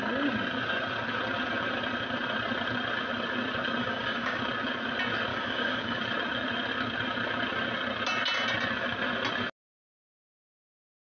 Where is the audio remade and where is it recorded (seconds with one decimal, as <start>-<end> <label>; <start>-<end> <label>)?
0.0-3.8 recorded; 3.8-4.4 remade; 4.4-5.3 recorded; 5.3-6.0 remade; 6.0-11.1 recorded